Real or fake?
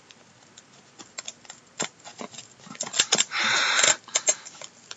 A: real